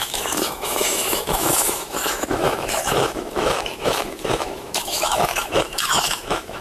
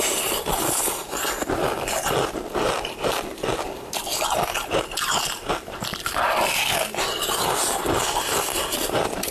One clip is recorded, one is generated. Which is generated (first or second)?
first